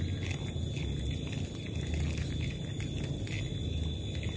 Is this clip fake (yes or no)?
no